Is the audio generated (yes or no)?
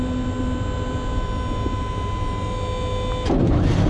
no